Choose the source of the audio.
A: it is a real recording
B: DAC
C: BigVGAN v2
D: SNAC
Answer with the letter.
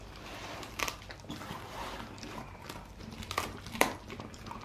A